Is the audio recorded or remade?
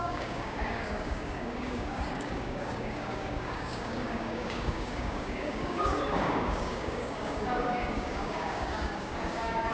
remade